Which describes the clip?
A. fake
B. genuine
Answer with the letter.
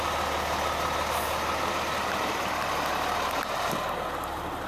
A